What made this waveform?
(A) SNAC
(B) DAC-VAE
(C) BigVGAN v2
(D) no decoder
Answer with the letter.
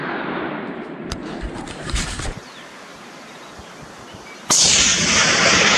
C